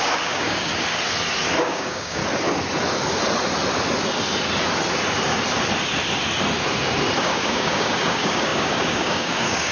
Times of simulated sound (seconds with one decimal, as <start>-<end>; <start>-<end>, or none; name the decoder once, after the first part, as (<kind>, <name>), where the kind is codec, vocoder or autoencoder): 0.0-0.7 (codec, DAC); 1.6-2.2; 7.2-9.7